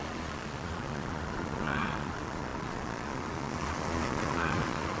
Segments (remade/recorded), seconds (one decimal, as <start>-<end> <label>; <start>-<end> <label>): 0.0-5.0 remade